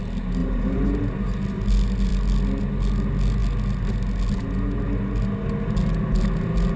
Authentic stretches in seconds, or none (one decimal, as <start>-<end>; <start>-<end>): 0.0-0.4; 1.0-6.8